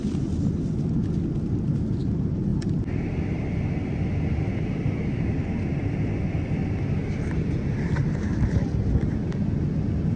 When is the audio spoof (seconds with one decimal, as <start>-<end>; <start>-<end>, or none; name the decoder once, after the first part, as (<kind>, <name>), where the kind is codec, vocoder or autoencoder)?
7.0-7.6 (vocoder, BigVGAN v2); 8.0-8.7